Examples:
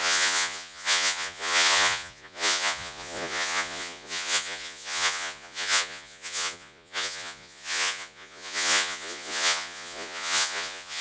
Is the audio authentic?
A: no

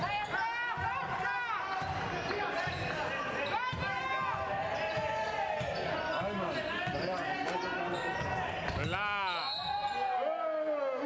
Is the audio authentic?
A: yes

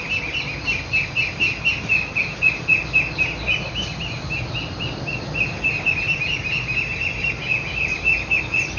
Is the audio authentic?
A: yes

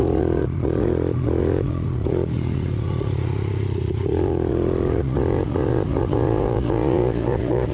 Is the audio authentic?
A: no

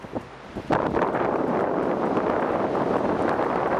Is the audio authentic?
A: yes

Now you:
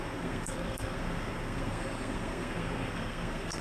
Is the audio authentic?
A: no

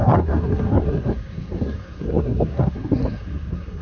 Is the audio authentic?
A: no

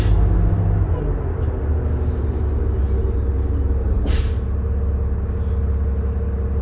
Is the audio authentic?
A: yes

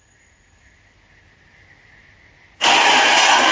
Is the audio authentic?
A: yes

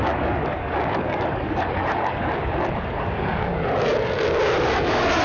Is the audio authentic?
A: no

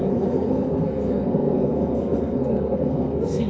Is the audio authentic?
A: no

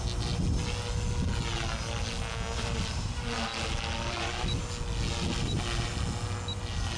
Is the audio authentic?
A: yes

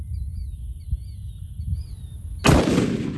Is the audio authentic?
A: yes